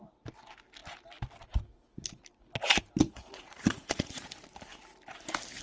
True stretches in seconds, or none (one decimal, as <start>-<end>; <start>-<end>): 0.0-3.0; 4.2-5.6